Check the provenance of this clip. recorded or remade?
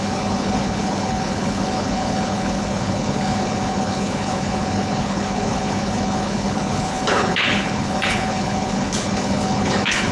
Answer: remade